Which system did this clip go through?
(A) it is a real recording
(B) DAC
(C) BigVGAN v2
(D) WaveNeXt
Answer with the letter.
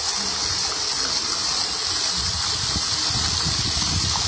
A